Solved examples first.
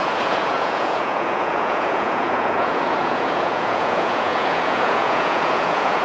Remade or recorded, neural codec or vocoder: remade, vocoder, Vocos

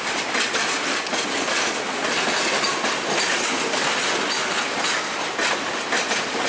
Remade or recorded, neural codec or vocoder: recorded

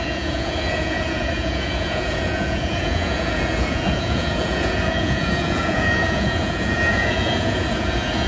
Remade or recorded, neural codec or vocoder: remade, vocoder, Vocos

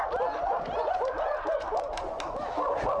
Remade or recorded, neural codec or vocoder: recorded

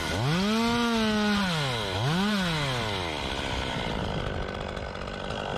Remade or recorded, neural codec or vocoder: recorded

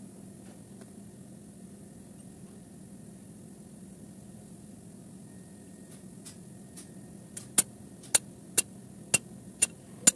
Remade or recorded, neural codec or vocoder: recorded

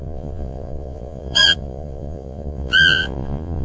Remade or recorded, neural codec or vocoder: remade, vocoder, Vocos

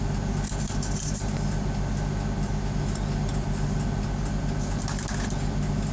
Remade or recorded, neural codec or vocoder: recorded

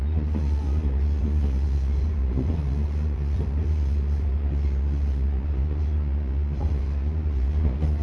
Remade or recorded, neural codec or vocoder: remade, vocoder, Vocos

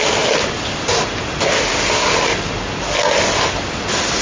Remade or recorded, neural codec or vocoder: recorded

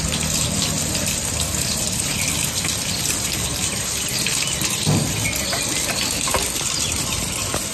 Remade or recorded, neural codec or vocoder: recorded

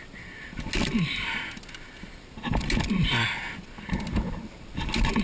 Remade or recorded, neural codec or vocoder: recorded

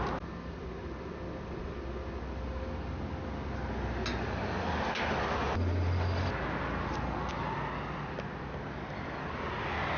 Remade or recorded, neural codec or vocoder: recorded